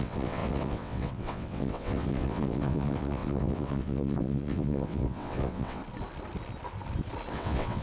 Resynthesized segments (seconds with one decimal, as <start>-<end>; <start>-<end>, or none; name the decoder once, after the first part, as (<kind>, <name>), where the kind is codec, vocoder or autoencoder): 0.0-5.8 (vocoder, WaveNeXt); 7.3-7.8